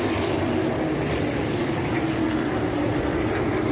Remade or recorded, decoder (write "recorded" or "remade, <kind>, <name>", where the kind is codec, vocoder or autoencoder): remade, vocoder, BigVGAN v2